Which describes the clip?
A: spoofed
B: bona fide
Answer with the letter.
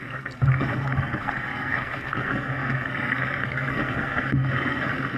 A